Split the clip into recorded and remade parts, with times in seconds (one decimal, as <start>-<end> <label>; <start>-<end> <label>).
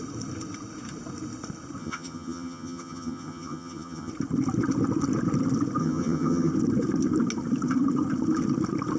0.0-1.8 recorded; 1.8-4.1 remade; 4.1-5.8 recorded; 5.8-6.5 remade; 6.5-9.0 recorded